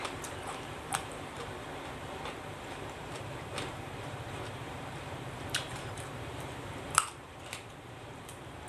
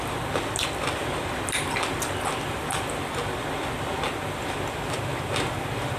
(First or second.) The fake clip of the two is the first